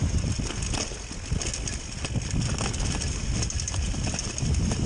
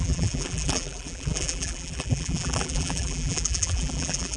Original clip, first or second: first